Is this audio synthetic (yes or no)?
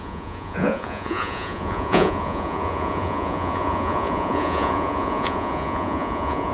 yes